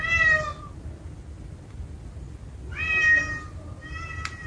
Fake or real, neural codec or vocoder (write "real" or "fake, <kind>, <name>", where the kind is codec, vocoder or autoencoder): real